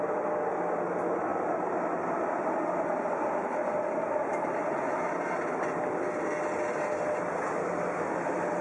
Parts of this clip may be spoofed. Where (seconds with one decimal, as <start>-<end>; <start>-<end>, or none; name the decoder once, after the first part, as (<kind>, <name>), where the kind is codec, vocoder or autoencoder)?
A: none